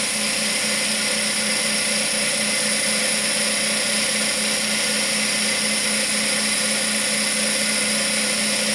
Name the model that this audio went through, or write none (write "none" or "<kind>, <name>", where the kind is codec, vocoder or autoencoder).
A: none